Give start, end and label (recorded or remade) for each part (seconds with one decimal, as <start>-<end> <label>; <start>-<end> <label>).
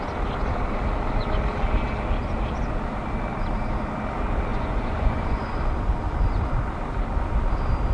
0.0-4.5 recorded; 4.5-5.6 remade; 5.6-7.9 recorded